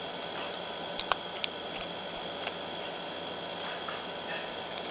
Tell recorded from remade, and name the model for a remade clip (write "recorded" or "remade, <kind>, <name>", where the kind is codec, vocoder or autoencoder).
remade, vocoder, BigVGAN v2